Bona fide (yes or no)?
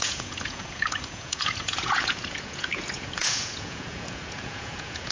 no